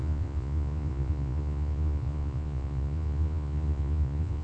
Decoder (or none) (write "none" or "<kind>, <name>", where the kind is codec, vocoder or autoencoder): vocoder, Vocos